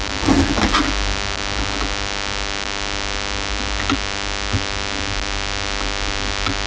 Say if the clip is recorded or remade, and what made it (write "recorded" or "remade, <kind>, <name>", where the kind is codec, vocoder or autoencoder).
recorded